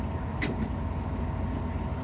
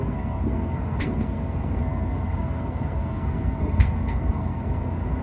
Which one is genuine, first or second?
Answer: first